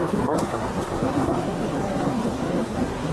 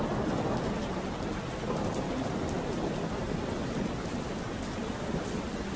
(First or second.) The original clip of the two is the second